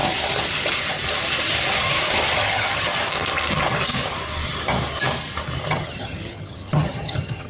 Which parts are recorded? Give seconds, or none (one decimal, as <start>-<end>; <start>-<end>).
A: 0.0-2.4; 2.9-5.7